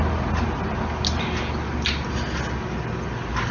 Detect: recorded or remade recorded